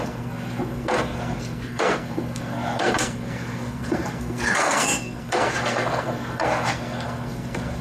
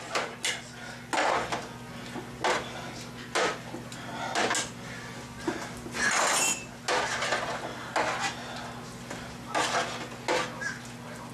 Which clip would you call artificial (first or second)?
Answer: first